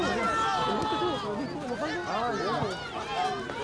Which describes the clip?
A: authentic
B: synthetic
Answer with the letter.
A